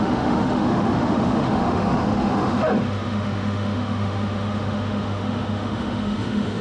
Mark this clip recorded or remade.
remade